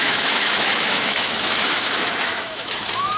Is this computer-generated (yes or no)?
yes